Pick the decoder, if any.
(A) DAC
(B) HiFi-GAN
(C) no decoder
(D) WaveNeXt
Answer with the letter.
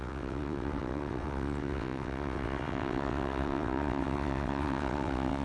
D